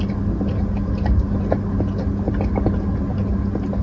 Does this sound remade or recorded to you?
recorded